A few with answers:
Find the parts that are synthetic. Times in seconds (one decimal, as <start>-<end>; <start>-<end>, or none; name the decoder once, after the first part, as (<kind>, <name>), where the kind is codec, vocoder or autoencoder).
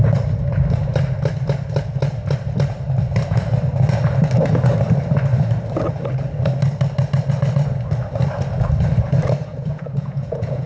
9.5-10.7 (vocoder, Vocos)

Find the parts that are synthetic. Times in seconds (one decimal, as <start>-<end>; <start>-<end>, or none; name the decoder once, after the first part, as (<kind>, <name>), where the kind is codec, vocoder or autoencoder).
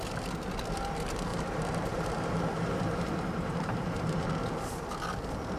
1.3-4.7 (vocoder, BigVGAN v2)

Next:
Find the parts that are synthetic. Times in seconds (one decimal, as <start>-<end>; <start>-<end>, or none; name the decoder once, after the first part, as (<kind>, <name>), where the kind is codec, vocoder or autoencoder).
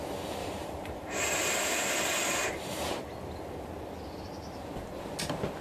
0.4-1.5 (vocoder, BigVGAN v2); 2.4-3.1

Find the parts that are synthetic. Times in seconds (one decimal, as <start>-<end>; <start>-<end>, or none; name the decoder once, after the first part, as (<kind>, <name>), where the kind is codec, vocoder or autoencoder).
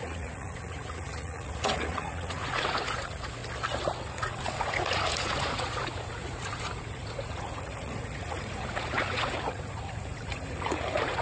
0.0-3.4 (vocoder, Vocos); 4.0-11.2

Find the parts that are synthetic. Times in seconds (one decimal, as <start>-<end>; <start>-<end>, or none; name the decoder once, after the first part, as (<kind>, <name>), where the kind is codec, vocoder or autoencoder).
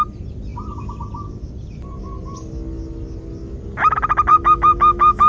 4.3-5.3 (autoencoder, DAC-VAE)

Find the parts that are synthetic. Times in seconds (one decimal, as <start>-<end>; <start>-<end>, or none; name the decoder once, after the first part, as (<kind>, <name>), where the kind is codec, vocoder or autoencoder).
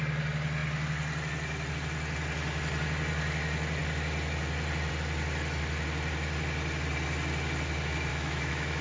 8.1-8.8 (autoencoder, DAC-VAE)